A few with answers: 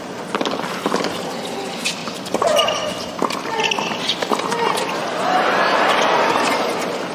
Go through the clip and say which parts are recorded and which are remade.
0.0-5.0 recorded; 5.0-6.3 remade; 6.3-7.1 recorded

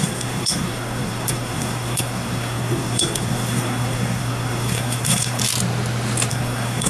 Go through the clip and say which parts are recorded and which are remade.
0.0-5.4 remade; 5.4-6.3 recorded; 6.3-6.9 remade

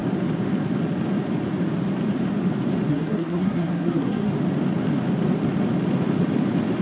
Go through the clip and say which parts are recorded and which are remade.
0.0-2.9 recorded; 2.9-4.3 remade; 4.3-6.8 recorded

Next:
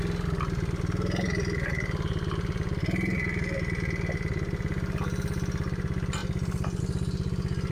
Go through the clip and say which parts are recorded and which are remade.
0.0-7.7 recorded

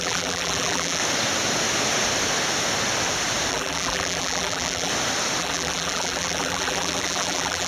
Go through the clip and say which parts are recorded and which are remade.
0.0-1.0 remade; 1.0-3.5 recorded; 3.5-4.9 remade; 4.9-5.4 recorded; 5.4-7.7 remade

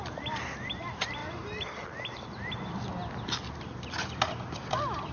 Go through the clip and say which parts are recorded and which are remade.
0.0-5.1 recorded

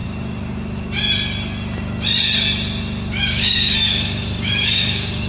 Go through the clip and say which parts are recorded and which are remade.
0.0-3.2 recorded; 3.2-5.3 remade

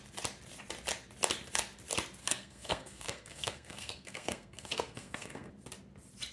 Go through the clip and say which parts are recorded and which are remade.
0.0-2.2 recorded; 2.2-5.5 remade; 5.5-6.3 recorded